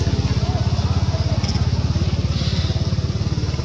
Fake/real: real